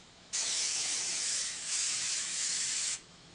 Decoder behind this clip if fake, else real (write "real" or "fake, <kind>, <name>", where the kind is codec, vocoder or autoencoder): fake, autoencoder, DAC-VAE